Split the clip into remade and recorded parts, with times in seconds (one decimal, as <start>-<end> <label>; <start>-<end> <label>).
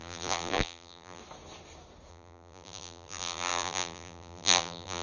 0.0-1.2 remade; 1.2-2.1 recorded; 2.1-5.0 remade